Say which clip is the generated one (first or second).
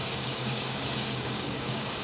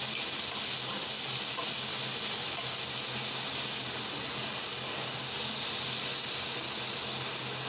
first